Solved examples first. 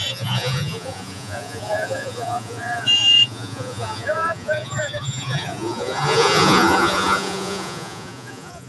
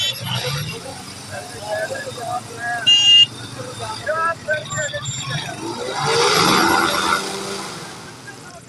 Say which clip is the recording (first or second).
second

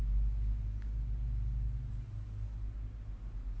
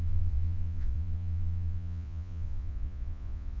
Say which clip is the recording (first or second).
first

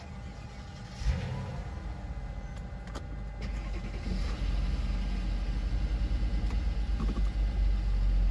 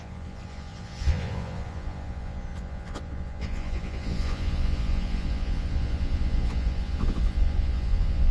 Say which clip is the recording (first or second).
first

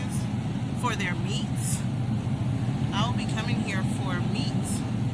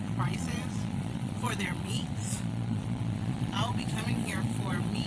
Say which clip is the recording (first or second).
first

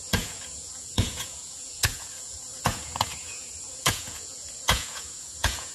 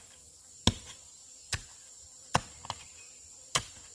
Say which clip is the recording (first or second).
second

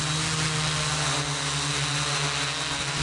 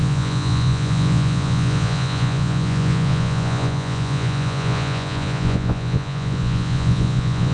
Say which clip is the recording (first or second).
first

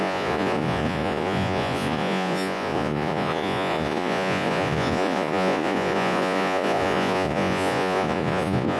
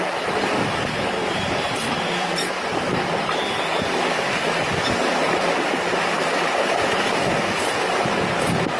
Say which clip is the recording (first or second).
second